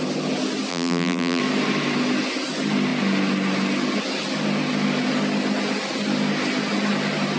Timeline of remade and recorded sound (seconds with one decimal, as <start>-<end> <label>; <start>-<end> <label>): 0.0-0.7 recorded; 0.7-1.4 remade; 1.4-7.4 recorded